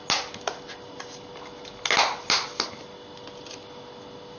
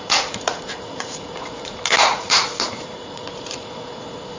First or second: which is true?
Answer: first